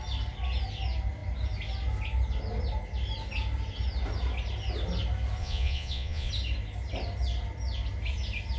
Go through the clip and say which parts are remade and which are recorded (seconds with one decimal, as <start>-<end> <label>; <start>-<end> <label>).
0.0-5.4 recorded; 5.4-6.3 remade; 6.3-8.6 recorded